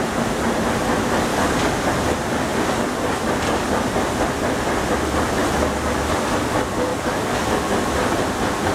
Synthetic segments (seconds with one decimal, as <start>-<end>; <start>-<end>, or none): 1.3-1.9; 6.9-7.6

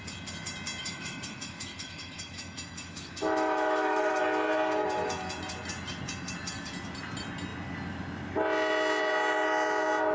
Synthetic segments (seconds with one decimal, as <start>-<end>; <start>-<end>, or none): 0.8-4.2